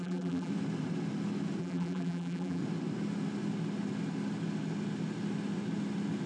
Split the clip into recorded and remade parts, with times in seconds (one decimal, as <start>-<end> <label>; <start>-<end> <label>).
0.0-0.5 remade; 0.5-1.6 recorded; 1.6-2.6 remade; 2.6-6.3 recorded

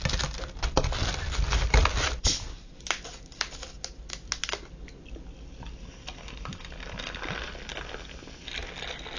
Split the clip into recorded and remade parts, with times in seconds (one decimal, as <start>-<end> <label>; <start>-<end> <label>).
0.0-9.2 recorded